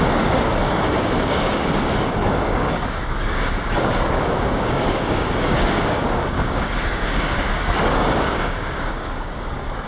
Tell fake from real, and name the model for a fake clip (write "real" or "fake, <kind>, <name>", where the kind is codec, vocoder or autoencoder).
fake, codec, DAC